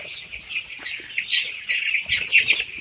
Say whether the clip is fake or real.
real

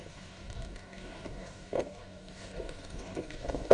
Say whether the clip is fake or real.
fake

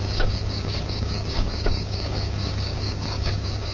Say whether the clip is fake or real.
fake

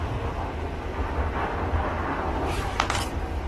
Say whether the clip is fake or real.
real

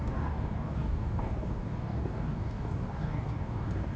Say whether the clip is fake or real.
fake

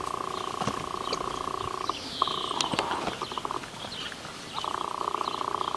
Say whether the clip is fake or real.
real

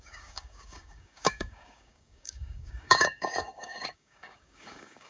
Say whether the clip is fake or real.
fake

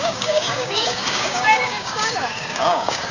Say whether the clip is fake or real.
fake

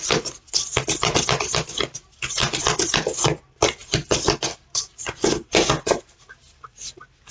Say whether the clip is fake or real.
real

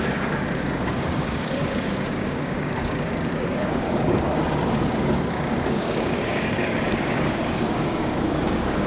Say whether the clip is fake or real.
fake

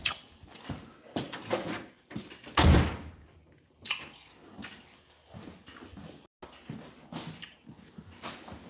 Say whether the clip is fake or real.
real